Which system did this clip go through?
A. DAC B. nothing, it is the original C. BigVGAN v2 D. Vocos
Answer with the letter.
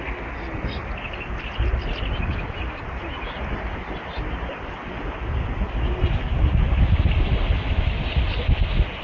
B